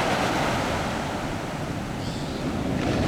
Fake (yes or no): no